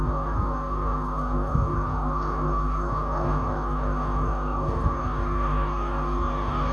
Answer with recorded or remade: remade